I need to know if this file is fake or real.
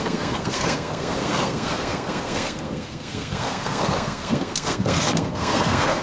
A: fake